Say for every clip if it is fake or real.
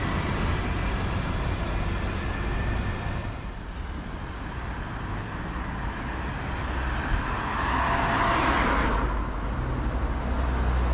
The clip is real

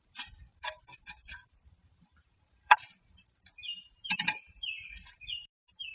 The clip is fake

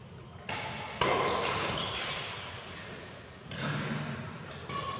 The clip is real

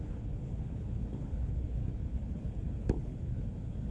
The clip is fake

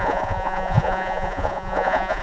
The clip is fake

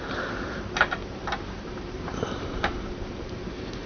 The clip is fake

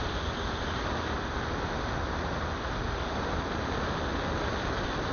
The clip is real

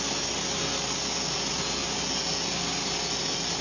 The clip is real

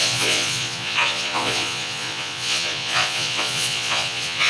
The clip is fake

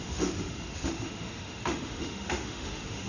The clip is fake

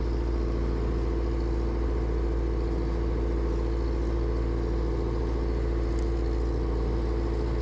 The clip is real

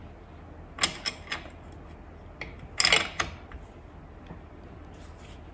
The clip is real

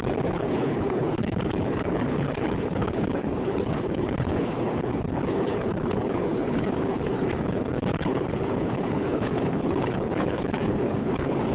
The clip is fake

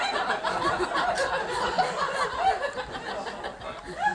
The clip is real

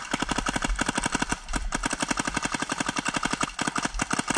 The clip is real